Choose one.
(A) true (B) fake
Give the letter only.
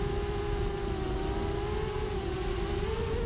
A